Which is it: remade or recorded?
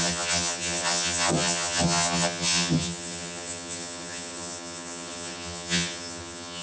remade